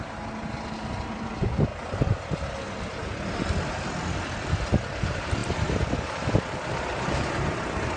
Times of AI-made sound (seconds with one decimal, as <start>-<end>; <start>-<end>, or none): 0.0-1.7; 3.9-8.0